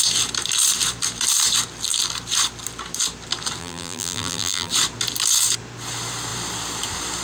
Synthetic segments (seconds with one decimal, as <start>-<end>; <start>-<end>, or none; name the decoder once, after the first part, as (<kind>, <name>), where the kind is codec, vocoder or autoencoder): 3.6-4.7 (vocoder, BigVGAN v2)